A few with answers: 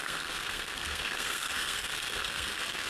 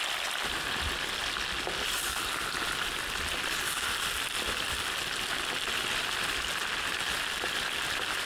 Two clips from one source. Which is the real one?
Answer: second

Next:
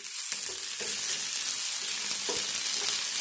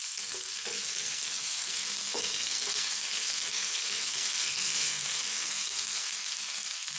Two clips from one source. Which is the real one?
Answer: first